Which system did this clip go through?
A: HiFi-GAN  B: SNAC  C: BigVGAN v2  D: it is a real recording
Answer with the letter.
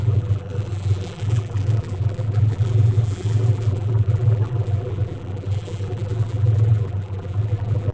C